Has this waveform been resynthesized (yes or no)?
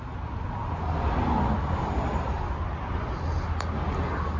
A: no